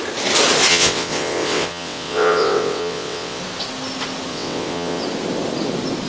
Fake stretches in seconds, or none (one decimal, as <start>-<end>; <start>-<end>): 0.7-3.4; 4.3-5.0